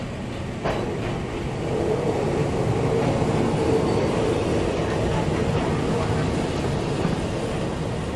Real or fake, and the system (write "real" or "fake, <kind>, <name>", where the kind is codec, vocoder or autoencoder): real